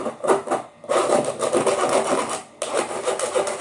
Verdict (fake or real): real